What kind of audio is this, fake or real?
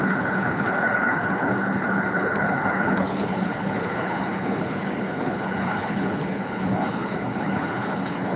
fake